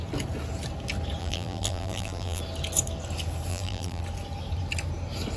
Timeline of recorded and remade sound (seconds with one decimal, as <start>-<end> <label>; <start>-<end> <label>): 0.0-1.2 recorded; 1.2-2.4 remade; 2.4-3.5 recorded; 3.5-4.0 remade; 4.0-5.4 recorded